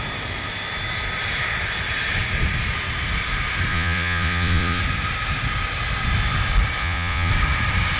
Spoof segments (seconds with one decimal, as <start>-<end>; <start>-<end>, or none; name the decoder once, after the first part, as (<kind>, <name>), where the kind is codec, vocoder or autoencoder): 3.7-4.8 (vocoder, Vocos); 6.8-7.3